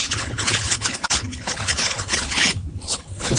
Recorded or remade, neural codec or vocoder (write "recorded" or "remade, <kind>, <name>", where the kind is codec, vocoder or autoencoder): remade, codec, HILCodec